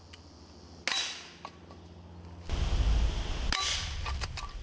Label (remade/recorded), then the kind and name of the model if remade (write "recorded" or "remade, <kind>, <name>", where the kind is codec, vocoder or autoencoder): recorded